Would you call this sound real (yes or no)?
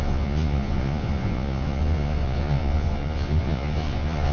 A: no